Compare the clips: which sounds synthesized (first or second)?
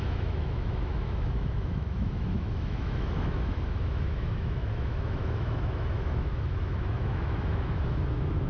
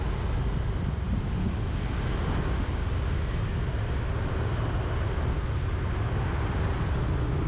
first